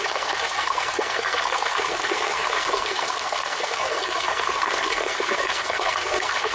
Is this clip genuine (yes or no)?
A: no